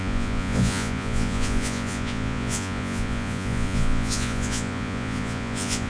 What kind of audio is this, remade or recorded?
remade